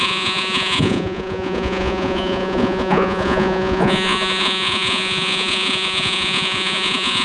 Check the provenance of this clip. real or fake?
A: fake